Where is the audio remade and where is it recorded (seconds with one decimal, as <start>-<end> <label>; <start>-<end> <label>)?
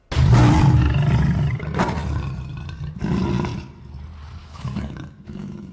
0.0-4.4 recorded; 4.4-5.7 remade